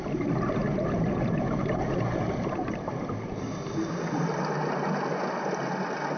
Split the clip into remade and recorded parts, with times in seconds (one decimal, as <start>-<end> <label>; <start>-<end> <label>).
0.0-6.2 recorded